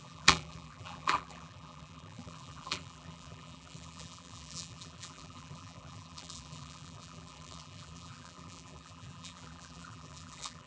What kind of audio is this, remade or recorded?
remade